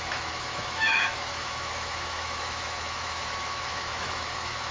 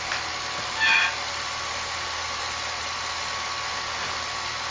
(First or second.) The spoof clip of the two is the first